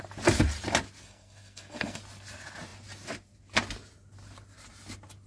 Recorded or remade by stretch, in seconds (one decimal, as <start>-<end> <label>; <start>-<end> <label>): 0.0-1.0 recorded; 1.0-2.0 remade; 2.0-5.3 recorded

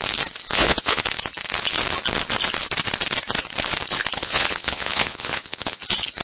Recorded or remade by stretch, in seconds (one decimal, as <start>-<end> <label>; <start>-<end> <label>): 0.0-0.5 recorded; 0.5-1.0 remade; 1.0-4.2 recorded; 4.2-5.8 remade; 5.8-6.2 recorded

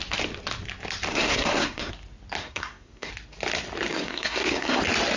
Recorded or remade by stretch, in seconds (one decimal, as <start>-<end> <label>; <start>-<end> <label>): 0.0-1.1 recorded; 1.1-1.9 remade; 1.9-2.4 recorded; 2.4-3.1 remade; 3.1-3.9 recorded; 3.9-4.8 remade; 4.8-5.2 recorded